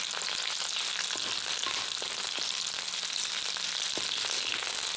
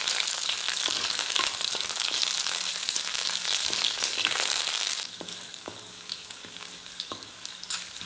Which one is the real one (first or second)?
first